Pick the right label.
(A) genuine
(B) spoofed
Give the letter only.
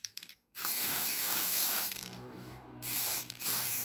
B